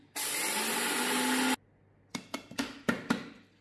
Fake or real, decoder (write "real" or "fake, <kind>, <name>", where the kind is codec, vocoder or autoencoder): real